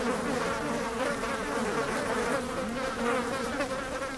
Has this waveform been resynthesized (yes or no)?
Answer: no